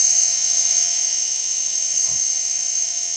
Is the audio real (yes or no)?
no